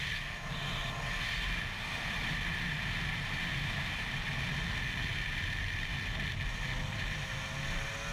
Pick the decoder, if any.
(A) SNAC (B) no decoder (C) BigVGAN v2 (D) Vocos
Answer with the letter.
B